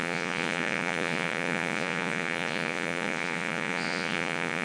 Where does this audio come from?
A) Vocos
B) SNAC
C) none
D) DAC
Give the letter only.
A